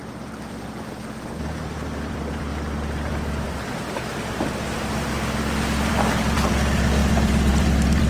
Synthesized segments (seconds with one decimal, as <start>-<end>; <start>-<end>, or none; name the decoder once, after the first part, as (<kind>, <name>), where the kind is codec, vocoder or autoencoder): 0.0-5.1 (vocoder, BigVGAN v2); 5.8-8.1